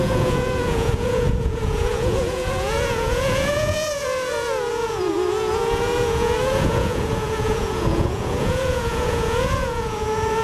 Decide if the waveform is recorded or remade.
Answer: remade